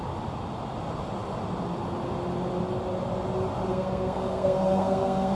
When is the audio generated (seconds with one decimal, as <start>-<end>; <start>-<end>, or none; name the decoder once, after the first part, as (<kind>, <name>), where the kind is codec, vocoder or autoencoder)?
3.7-5.3 (codec, SNAC)